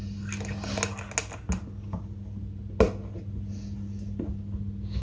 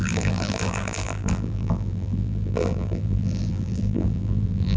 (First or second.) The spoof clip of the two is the second